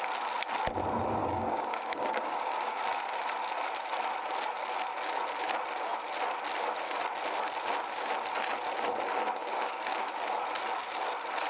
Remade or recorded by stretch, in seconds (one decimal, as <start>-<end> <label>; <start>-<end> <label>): 0.0-1.2 recorded; 1.2-2.8 remade; 2.8-9.4 recorded; 9.4-10.1 remade; 10.1-11.5 recorded